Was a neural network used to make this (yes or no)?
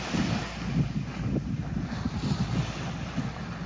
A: no